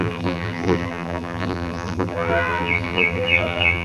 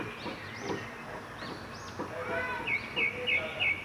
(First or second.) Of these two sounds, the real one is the second